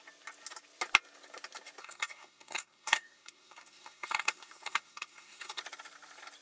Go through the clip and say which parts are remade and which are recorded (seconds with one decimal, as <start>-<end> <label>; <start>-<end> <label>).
0.0-1.8 recorded; 1.8-5.6 remade; 5.6-6.4 recorded